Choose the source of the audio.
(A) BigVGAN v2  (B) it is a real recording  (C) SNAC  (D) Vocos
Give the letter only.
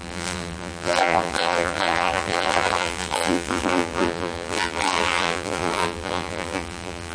A